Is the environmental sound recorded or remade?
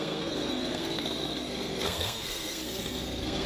remade